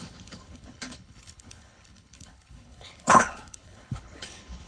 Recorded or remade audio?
remade